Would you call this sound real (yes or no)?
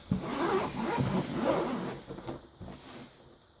yes